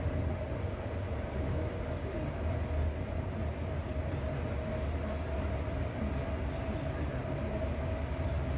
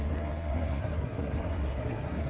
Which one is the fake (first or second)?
second